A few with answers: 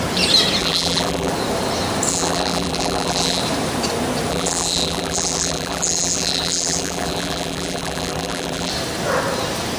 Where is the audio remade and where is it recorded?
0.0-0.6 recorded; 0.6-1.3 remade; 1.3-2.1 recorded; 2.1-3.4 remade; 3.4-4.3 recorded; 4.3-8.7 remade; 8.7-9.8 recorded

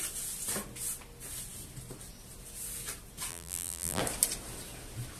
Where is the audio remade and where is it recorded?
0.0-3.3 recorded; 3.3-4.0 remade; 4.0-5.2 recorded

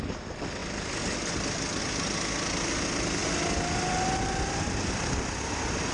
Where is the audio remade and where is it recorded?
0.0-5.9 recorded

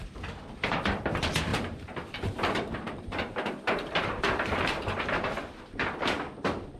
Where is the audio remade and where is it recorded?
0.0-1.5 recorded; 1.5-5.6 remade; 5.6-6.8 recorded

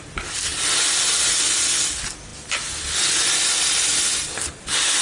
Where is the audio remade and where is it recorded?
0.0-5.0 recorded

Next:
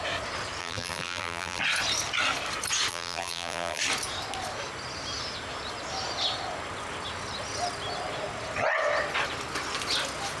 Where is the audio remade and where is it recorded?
0.0-0.6 recorded; 0.6-1.6 remade; 1.6-2.9 recorded; 2.9-3.8 remade; 3.8-10.4 recorded

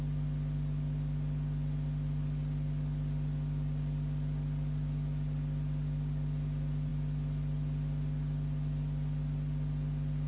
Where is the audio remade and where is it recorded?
0.0-10.3 recorded

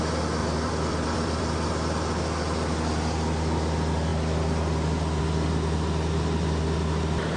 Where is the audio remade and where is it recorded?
0.0-0.4 recorded; 0.4-1.7 remade; 1.7-7.4 recorded